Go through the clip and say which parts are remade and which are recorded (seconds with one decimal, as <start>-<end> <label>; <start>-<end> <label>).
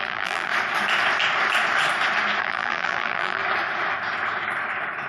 0.0-0.5 remade; 0.5-2.4 recorded; 2.4-3.4 remade; 3.4-5.1 recorded